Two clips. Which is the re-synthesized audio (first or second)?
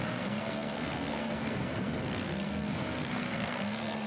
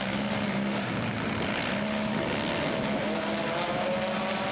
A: first